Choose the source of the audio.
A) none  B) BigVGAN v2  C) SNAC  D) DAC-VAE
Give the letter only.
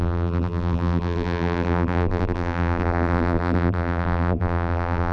B